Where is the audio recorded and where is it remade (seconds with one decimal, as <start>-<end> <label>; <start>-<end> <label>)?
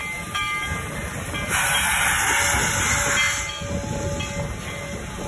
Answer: 0.0-5.3 recorded